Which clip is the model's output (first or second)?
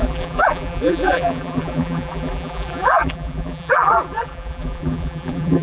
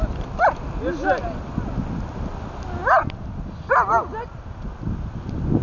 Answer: first